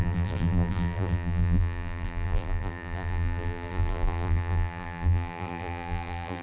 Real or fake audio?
fake